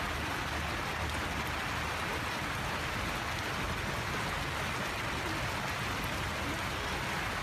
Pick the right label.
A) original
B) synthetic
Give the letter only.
A